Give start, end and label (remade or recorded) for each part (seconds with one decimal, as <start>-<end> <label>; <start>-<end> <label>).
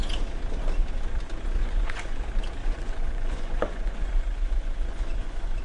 0.0-1.6 recorded; 1.6-2.2 remade; 2.2-2.6 recorded; 2.6-5.6 remade